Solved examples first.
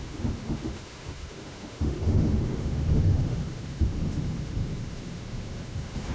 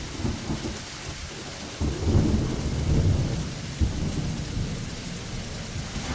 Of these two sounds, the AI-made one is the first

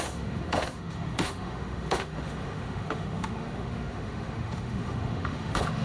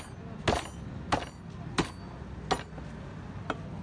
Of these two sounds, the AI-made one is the first